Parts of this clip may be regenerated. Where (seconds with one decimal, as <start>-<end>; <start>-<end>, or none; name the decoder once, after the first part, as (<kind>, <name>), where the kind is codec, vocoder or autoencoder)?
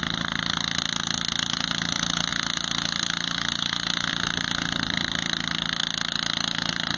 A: none